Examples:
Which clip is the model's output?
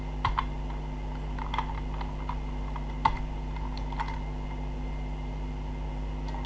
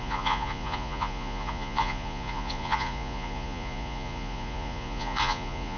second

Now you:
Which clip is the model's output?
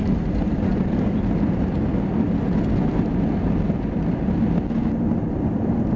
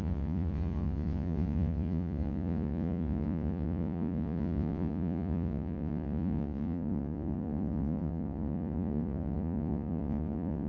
second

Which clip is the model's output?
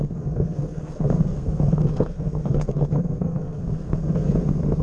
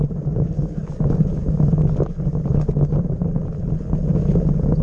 first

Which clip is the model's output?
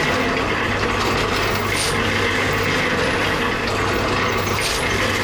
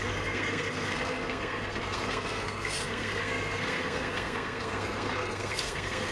second